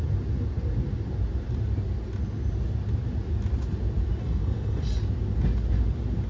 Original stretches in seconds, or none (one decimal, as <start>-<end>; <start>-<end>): 0.0-4.2; 4.8-6.3